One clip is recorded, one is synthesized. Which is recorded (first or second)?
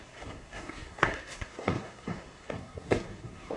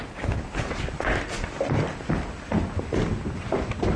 second